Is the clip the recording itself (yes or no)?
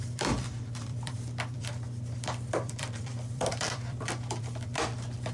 no